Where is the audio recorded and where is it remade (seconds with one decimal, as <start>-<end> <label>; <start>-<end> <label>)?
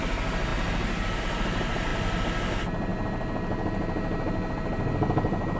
0.0-5.6 recorded